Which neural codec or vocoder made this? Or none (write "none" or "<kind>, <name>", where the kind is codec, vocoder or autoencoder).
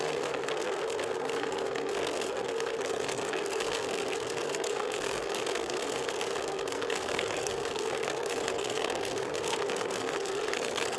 codec, SNAC